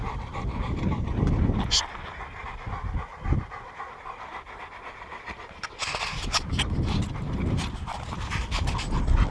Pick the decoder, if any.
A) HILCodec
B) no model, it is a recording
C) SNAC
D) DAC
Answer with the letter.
B